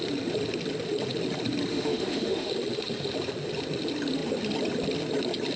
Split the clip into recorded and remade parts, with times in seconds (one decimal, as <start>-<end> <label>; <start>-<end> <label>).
0.0-1.7 recorded; 1.7-2.5 remade; 2.5-5.6 recorded